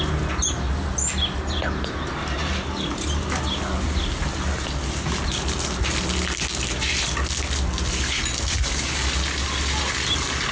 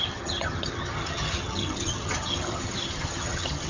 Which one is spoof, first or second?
second